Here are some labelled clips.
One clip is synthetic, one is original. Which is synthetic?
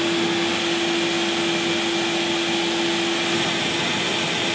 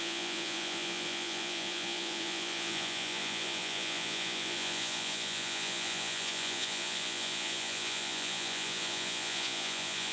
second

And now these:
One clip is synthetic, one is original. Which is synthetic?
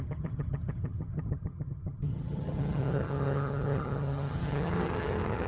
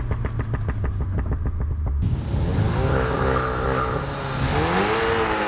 first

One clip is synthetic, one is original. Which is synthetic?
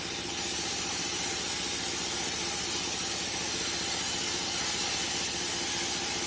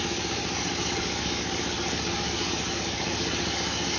second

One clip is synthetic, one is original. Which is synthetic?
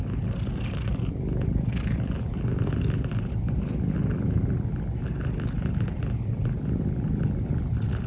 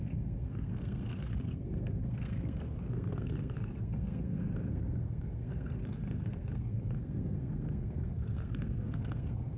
second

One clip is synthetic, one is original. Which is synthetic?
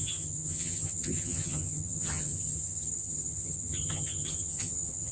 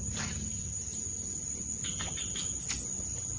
first